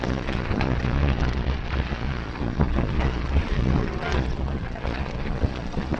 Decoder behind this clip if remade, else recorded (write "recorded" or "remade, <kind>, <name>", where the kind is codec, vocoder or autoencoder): remade, vocoder, Vocos